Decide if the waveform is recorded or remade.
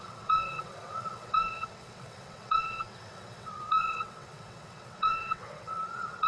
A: remade